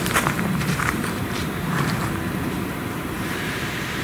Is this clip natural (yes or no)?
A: no